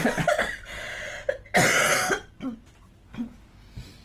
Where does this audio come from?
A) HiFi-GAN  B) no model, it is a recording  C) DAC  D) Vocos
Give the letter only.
B